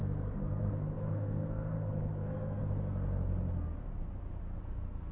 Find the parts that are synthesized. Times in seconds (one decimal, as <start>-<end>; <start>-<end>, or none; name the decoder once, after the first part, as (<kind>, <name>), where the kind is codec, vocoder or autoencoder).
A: 0.0-2.6 (codec, SNAC); 4.6-5.1